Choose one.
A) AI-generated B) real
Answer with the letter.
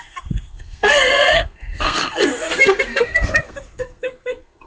A